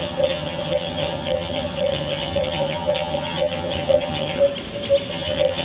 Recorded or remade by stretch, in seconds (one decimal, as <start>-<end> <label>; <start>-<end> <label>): 0.0-4.4 remade; 4.4-5.1 recorded; 5.1-5.6 remade